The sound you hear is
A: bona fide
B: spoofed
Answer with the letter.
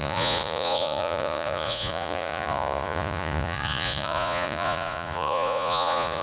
B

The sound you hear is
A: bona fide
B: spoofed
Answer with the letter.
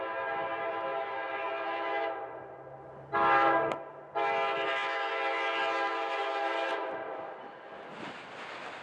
A